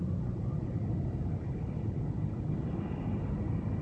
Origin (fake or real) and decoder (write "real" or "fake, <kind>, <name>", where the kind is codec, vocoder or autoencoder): real